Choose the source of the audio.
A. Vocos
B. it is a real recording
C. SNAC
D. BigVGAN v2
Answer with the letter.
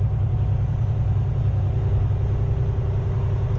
B